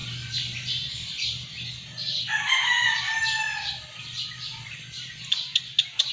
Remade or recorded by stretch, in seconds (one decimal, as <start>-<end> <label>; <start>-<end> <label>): 0.0-6.1 recorded